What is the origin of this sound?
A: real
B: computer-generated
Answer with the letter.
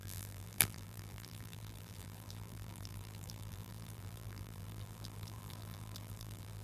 B